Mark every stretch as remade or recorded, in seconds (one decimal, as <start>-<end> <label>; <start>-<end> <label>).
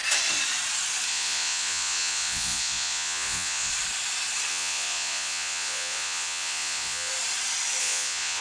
0.0-1.1 recorded; 1.1-3.7 remade; 3.7-4.5 recorded; 4.5-7.1 remade; 7.1-7.8 recorded; 7.8-8.4 remade